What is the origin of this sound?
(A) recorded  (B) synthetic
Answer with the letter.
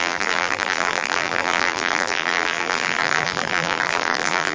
B